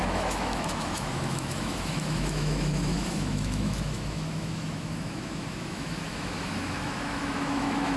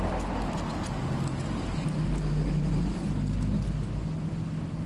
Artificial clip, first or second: first